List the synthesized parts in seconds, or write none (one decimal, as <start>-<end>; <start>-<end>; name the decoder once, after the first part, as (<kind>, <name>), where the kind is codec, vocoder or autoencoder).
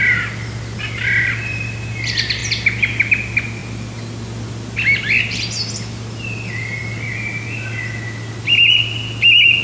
none